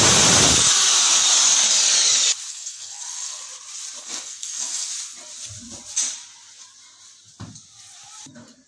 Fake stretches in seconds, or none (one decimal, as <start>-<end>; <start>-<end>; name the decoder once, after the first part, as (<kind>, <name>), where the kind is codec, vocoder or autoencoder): 2.5-3.4 (codec, SNAC); 4.0-4.9